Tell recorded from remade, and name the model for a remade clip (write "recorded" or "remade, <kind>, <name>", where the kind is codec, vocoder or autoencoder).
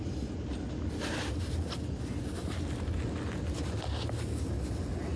recorded